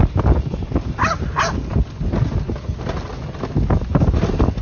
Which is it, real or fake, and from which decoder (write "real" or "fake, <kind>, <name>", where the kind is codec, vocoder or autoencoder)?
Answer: real